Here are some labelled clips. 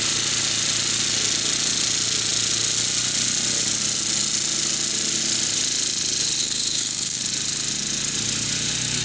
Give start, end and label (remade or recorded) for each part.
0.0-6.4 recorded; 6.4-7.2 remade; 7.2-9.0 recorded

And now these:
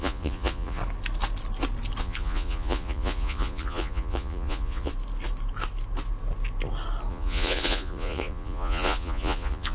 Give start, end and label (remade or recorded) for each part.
0.0-0.8 remade; 0.8-2.0 recorded; 2.0-4.9 remade; 4.9-7.1 recorded; 7.1-9.7 remade

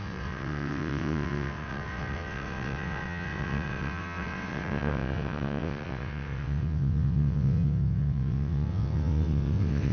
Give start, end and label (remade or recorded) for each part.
0.0-9.9 remade

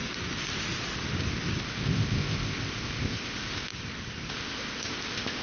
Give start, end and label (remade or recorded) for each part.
0.0-1.6 recorded; 1.6-3.7 remade; 3.7-4.3 recorded; 4.3-5.4 remade

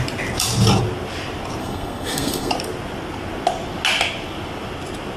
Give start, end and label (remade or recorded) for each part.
0.0-1.6 recorded; 1.6-2.5 remade; 2.5-5.2 recorded

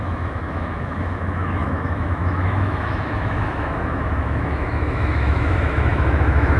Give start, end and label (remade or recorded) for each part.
0.0-6.6 remade

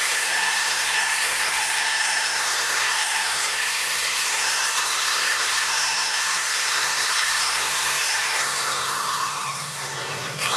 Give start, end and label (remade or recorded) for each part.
0.0-10.6 remade

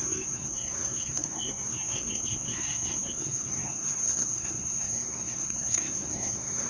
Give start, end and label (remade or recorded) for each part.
0.0-6.7 remade